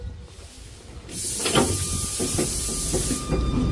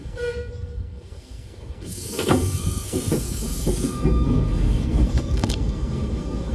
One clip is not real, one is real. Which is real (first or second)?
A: first